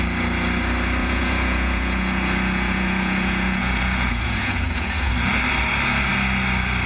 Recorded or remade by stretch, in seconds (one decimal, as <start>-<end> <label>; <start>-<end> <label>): 0.0-1.0 recorded; 1.0-5.1 remade; 5.1-6.9 recorded